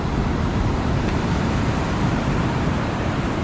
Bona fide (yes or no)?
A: no